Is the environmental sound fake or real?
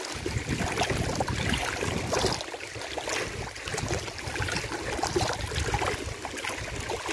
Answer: real